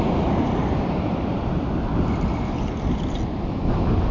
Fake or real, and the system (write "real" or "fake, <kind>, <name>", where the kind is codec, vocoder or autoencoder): real